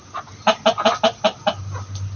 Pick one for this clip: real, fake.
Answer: real